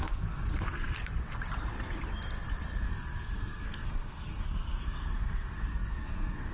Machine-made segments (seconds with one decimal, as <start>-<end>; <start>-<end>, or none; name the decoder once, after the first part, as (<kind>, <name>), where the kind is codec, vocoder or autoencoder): 0.0-1.0 (codec, SNAC); 2.8-6.5